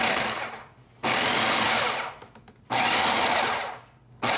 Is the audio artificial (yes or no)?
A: no